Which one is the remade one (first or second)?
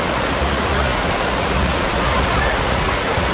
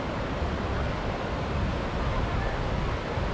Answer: first